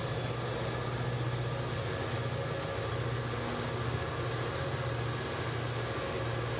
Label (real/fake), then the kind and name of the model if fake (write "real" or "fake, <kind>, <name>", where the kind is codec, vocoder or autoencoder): real